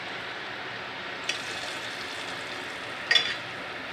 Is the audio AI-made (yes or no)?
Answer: no